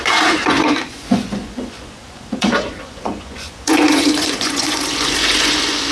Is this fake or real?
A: fake